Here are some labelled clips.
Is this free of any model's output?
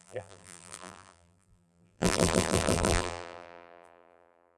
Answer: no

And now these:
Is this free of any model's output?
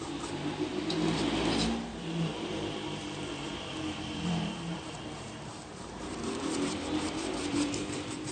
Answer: no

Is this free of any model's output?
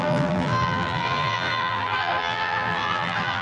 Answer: no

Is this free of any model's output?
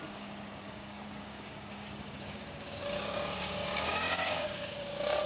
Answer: no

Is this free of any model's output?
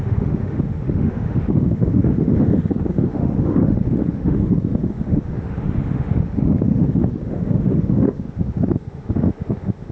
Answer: no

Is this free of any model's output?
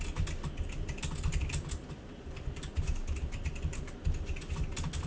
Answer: yes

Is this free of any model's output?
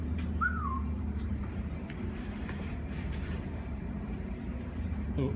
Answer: no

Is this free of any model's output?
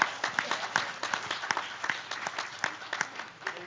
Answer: yes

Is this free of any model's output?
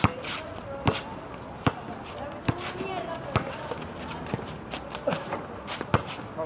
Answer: yes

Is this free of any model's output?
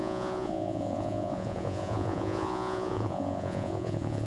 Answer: no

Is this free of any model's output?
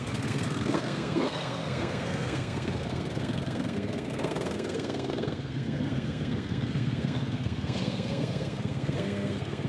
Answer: no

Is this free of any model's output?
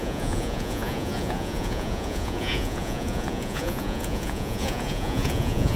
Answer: no